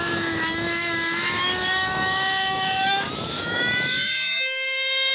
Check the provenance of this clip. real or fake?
fake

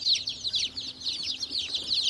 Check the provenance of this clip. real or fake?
real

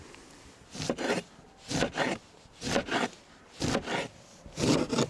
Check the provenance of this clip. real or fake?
fake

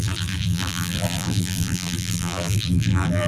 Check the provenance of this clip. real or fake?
fake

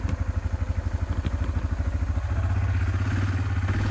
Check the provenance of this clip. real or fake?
real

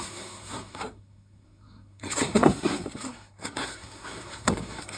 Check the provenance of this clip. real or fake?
fake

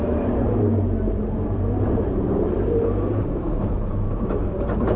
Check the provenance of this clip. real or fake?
fake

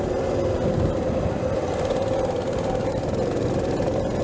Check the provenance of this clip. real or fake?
real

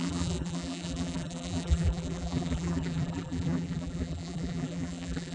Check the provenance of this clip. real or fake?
fake